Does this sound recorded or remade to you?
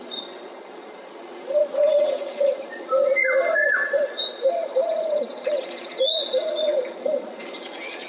remade